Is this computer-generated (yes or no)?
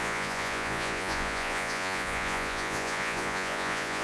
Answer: yes